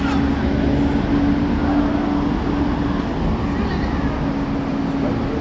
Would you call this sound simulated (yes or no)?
no